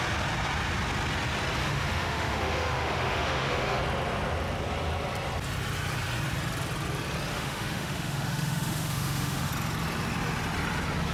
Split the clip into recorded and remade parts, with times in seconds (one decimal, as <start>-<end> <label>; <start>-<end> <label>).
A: 0.0-1.6 recorded; 1.6-3.8 remade; 3.8-7.3 recorded; 7.3-9.5 remade; 9.5-11.1 recorded